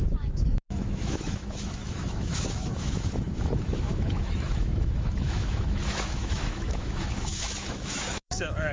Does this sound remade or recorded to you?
remade